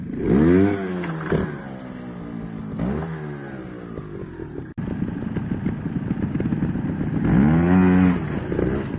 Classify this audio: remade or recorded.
recorded